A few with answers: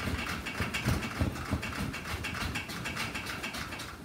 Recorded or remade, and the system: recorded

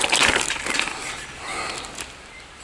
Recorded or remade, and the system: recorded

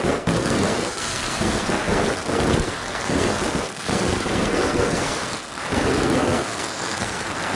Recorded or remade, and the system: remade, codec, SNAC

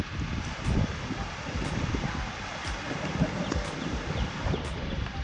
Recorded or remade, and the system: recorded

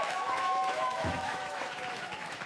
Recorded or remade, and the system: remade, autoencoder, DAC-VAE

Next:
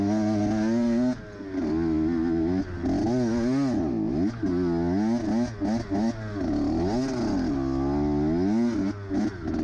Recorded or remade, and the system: recorded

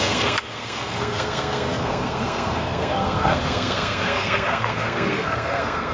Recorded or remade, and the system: remade, codec, SNAC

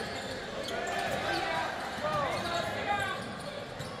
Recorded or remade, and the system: recorded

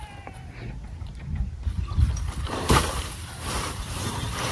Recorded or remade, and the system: remade, vocoder, BigVGAN v2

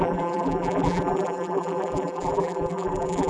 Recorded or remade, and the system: remade, vocoder, BigVGAN v2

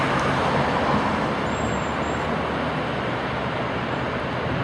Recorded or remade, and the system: recorded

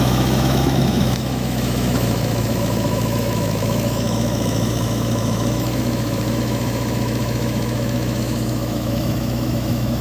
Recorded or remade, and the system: remade, autoencoder, DAC-VAE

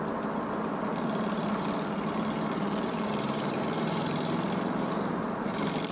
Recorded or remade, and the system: remade, vocoder, BigVGAN v2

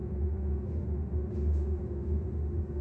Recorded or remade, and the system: remade, autoencoder, DAC-VAE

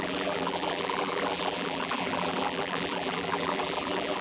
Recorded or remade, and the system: remade, vocoder, BigVGAN v2